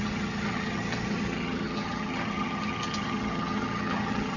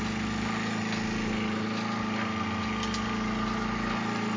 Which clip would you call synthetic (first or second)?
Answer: first